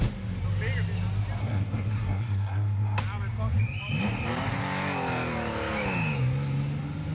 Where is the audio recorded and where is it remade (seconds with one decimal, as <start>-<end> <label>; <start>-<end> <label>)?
0.0-1.4 recorded; 1.4-3.0 remade; 3.0-7.1 recorded